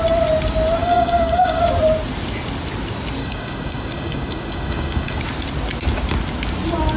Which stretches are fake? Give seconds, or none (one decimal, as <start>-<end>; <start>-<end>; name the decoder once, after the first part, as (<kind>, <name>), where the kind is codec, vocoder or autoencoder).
0.8-1.6 (codec, DAC); 3.2-5.2